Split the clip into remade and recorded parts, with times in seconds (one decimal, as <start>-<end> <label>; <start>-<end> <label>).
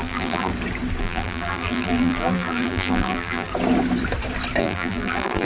0.0-0.5 remade; 0.5-1.0 recorded; 1.0-3.5 remade; 3.5-4.6 recorded; 4.6-5.4 remade